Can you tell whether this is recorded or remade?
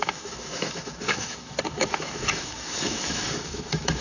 remade